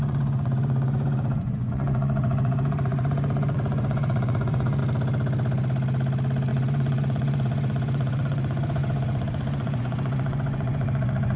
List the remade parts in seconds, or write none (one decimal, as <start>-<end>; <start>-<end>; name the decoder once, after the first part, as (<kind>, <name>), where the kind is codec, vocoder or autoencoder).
0.0-4.8 (vocoder, Vocos); 6.5-11.4